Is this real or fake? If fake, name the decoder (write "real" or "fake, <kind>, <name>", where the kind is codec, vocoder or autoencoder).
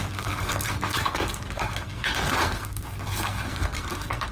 fake, codec, SNAC